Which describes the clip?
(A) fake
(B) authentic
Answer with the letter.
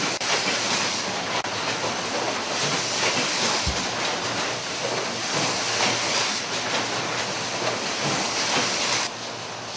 B